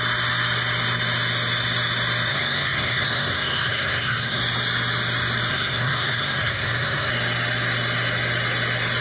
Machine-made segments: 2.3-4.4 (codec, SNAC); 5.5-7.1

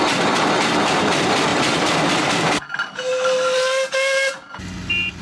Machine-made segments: none

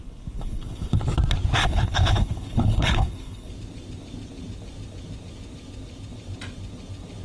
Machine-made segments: 0.0-1.0 (codec, HILCodec); 1.6-3.5

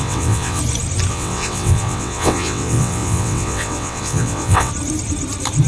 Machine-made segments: 0.0-0.6 (vocoder, WaveNeXt); 1.1-4.7

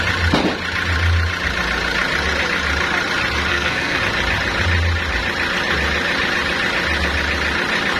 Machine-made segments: 3.5-4.0 (codec, SNAC)

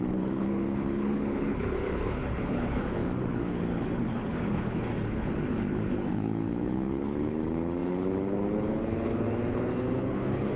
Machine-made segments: 0.0-10.6 (codec, HILCodec)

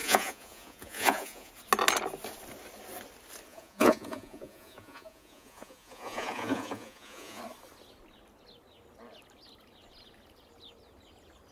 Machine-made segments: 0.0-1.5 (vocoder, Vocos); 3.5-7.4

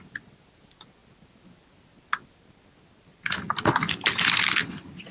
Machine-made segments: none